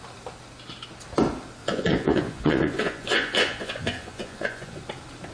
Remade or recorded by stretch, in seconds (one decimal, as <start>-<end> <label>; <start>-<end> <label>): 0.0-1.6 recorded; 1.6-4.8 remade; 4.8-5.3 recorded